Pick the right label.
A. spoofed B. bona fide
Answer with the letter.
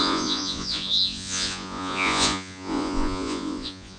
A